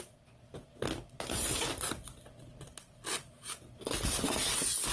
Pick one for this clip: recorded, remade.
recorded